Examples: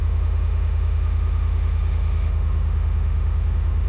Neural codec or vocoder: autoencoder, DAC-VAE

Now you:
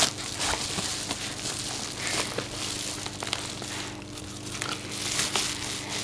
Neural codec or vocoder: none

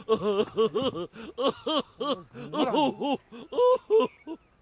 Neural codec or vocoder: none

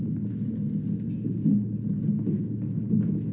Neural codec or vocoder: none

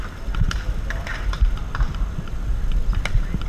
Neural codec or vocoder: none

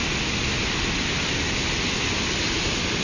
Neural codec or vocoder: none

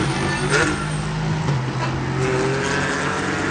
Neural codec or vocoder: none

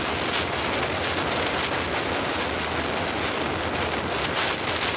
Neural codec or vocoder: none